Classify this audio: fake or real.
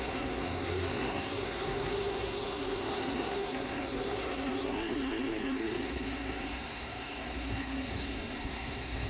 fake